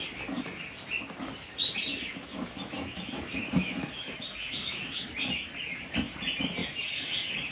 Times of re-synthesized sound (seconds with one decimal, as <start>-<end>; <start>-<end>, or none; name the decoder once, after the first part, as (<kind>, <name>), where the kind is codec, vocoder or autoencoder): 2.1-5.1 (autoencoder, DAC-VAE); 6.6-7.5